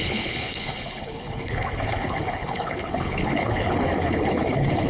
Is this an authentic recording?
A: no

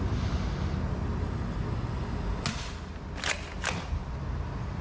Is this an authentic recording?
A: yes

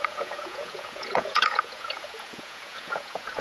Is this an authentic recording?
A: no